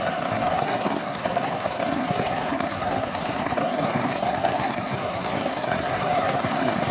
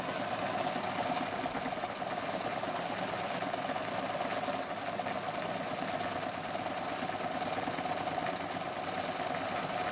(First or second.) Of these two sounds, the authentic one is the second